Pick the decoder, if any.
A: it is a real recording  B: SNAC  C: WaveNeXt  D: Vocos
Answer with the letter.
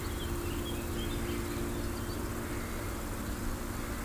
A